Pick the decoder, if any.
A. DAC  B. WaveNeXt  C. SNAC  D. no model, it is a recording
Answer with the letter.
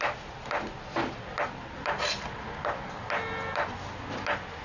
D